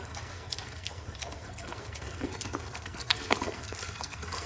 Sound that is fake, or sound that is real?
fake